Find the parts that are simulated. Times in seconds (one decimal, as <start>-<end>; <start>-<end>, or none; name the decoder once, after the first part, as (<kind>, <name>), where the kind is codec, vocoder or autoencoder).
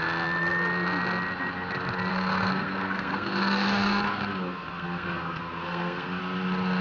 2.1-6.2 (codec, SNAC)